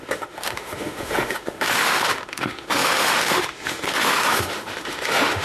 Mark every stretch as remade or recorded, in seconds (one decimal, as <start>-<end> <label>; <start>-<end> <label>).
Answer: 0.0-5.4 remade